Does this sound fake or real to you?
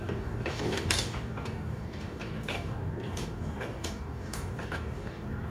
fake